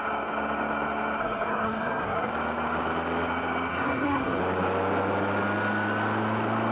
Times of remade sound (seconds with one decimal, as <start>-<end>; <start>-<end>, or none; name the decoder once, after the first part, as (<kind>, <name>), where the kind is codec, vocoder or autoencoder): 1.2-2.3 (codec, SNAC); 3.7-4.4